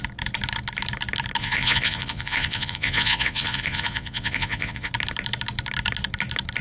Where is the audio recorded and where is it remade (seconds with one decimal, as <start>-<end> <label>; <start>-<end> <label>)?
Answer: 0.0-1.4 recorded; 1.4-4.9 remade; 4.9-6.6 recorded